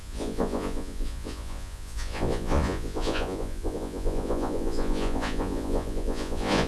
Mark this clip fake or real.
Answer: fake